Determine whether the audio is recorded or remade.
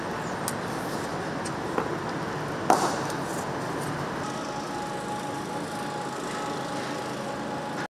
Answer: recorded